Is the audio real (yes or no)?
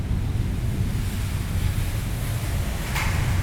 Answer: yes